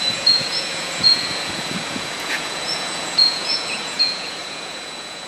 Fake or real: fake